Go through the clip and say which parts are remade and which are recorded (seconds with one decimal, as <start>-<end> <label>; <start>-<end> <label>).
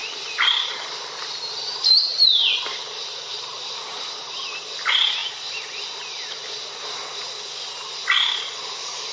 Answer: 0.0-1.2 remade; 1.2-2.1 recorded; 2.1-4.2 remade; 4.2-9.1 recorded